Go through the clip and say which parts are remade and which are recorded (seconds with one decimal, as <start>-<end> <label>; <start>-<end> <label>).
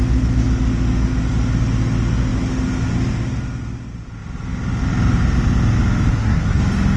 0.0-6.1 recorded; 6.1-6.6 remade; 6.6-7.0 recorded